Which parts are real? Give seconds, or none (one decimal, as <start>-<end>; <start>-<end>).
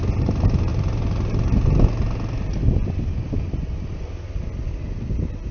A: 0.0-5.5